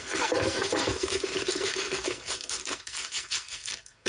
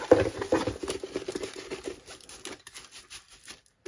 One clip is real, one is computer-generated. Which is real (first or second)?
second